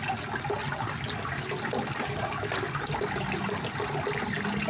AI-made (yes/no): no